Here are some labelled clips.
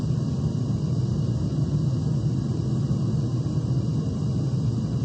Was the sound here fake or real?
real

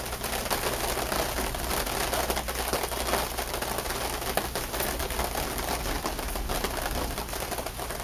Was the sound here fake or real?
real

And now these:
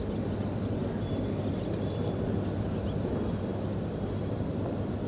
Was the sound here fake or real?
real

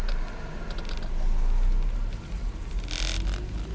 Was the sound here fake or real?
real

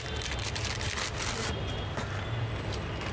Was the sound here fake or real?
real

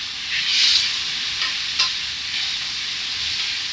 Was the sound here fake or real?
real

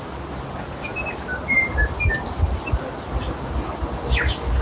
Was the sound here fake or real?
real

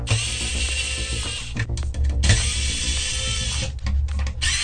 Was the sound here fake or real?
real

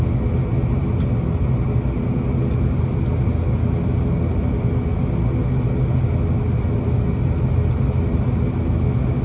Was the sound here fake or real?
real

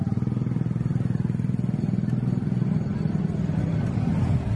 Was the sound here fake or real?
real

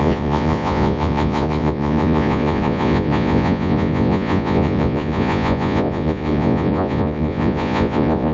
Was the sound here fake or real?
fake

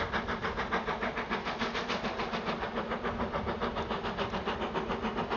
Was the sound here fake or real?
real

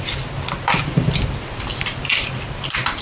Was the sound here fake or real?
real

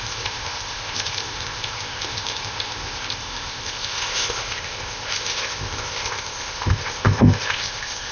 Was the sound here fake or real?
fake